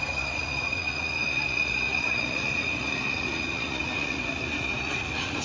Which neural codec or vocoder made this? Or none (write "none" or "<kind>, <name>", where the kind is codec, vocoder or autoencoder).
vocoder, Vocos